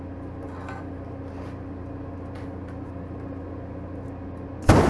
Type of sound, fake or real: real